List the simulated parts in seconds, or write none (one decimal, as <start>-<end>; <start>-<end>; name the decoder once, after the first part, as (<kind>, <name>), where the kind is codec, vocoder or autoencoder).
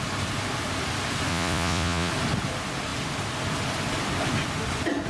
1.3-2.1 (vocoder, Vocos)